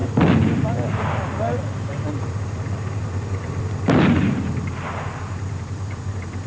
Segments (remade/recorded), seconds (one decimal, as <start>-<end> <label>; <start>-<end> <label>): 0.0-6.5 recorded